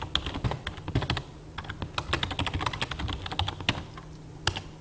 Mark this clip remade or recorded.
recorded